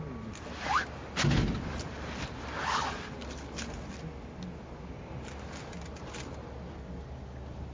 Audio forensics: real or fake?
real